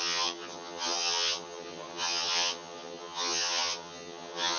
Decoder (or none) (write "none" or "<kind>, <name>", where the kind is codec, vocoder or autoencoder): vocoder, HiFi-GAN